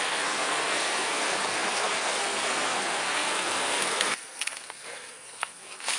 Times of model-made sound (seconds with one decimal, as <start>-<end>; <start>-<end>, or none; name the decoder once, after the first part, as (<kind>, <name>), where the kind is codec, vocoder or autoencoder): 0.0-6.0 (codec, SNAC)